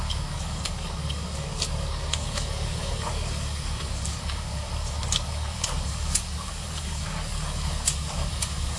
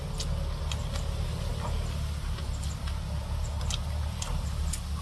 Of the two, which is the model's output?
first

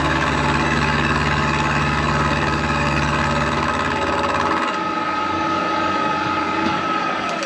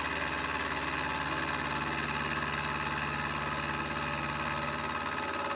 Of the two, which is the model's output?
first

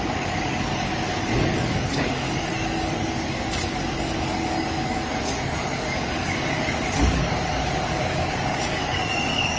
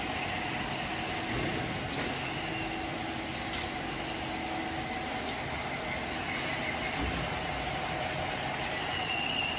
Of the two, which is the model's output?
first